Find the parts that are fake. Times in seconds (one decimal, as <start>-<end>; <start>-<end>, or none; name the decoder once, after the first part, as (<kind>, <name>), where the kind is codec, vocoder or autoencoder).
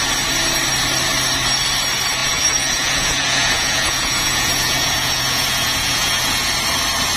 2.2-6.5 (vocoder, Vocos)